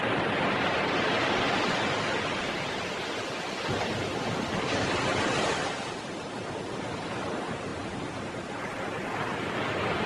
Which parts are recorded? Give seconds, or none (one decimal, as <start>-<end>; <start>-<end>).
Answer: 0.0-10.1